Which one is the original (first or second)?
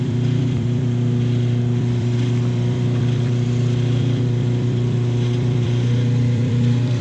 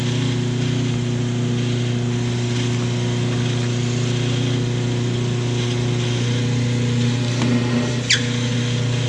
second